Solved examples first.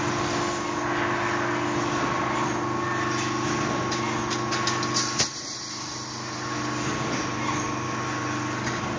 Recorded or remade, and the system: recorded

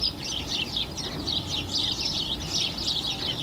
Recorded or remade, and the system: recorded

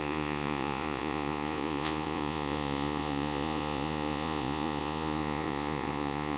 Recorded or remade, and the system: remade, vocoder, Vocos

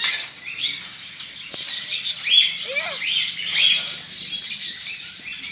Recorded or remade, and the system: recorded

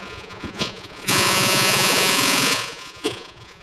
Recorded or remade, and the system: remade, vocoder, Vocos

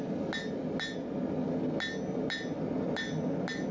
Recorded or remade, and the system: recorded